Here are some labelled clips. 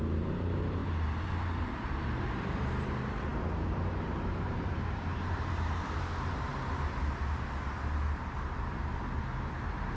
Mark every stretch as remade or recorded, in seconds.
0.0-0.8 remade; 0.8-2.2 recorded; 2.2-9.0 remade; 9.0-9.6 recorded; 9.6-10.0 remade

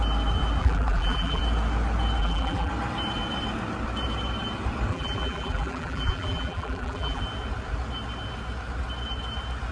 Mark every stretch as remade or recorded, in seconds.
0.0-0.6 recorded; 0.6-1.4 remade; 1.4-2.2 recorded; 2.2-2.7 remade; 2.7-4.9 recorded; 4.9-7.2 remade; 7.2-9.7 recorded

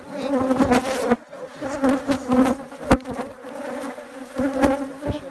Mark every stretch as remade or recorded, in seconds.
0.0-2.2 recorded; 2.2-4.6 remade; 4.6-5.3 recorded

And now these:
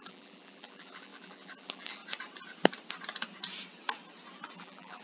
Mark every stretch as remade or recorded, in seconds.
0.0-2.0 remade; 2.0-4.6 recorded; 4.6-5.0 remade

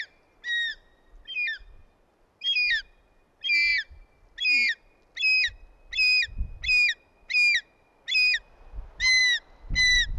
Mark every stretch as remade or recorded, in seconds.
0.0-10.2 recorded